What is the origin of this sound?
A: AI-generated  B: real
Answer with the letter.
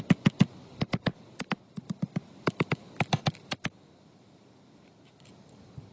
B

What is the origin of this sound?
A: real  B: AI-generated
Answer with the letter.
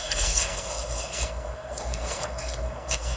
B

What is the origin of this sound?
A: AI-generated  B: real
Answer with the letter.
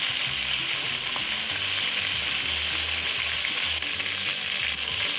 B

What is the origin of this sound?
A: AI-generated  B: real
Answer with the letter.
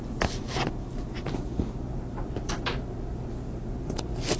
B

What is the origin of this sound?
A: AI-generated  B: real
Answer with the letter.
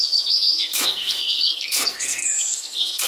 A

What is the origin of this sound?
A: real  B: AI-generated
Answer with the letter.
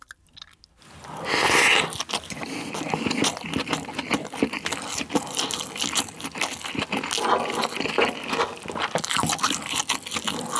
A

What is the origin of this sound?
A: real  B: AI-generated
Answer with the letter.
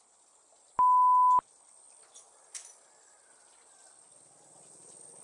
A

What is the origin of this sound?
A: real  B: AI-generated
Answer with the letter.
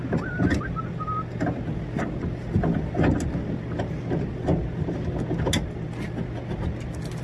A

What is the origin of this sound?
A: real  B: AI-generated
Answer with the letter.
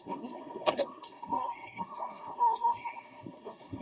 B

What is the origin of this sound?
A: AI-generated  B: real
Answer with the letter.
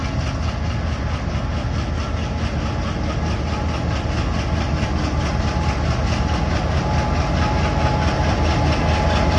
B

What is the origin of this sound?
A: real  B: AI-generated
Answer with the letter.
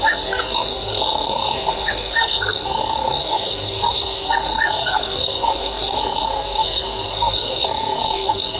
B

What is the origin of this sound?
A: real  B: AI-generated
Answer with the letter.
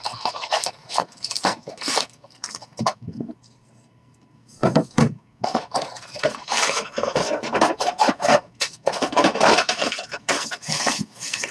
B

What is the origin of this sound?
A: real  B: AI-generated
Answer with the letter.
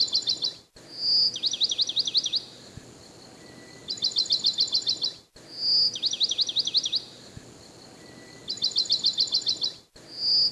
A